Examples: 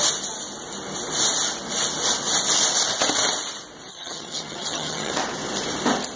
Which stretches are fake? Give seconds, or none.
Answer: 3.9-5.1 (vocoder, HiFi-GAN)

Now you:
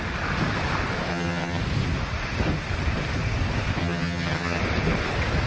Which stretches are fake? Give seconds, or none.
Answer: 1.1-1.6 (vocoder, HiFi-GAN); 3.8-4.6

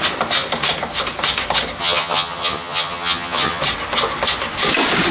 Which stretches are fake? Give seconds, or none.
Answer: 1.8-3.6 (vocoder, HiFi-GAN)

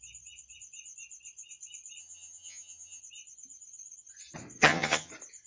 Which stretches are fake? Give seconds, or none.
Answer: 2.0-3.0 (vocoder, HiFi-GAN); 4.6-5.1

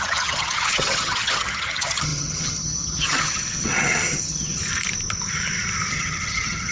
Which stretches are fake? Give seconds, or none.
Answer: 0.0-4.6 (vocoder, HiFi-GAN); 5.9-6.7

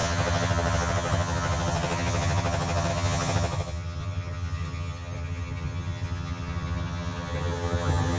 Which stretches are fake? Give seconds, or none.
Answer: 0.0-8.2 (vocoder, HiFi-GAN)